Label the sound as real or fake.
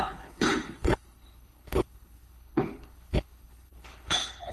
fake